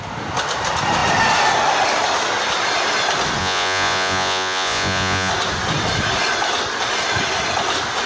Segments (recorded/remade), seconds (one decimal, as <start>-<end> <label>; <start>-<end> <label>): 0.0-3.4 recorded; 3.4-5.3 remade; 5.3-8.1 recorded